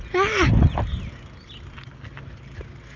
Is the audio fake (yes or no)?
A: no